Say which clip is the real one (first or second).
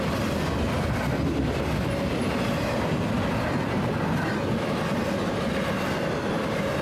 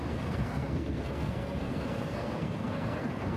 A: first